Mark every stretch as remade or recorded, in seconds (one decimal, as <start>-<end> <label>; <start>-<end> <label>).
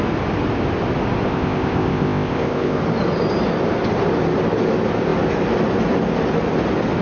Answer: 0.0-1.3 recorded; 1.3-2.8 remade; 2.8-7.0 recorded